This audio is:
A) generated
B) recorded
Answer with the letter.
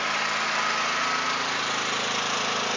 B